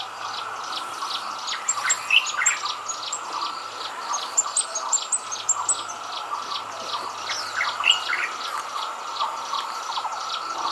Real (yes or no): yes